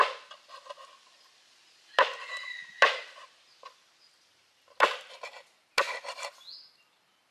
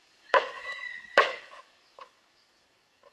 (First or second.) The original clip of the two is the first